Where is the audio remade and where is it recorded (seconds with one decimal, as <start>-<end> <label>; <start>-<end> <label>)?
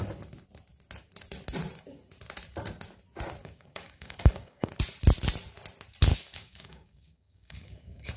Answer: 0.0-3.4 recorded; 3.4-4.7 remade; 4.7-6.1 recorded; 6.1-8.2 remade